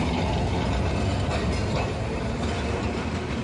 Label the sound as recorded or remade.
recorded